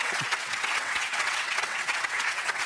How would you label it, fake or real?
fake